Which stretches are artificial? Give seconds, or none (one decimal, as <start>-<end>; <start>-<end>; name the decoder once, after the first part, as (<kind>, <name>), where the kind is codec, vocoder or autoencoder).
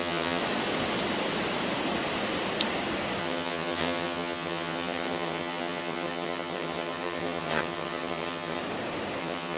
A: 0.0-0.4 (vocoder, HiFi-GAN); 3.2-8.6; 9.2-9.6